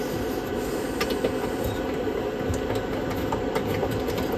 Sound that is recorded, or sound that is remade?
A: recorded